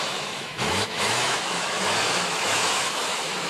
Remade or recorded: remade